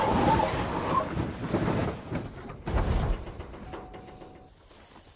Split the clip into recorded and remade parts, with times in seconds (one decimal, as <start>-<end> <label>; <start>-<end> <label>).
0.0-5.2 recorded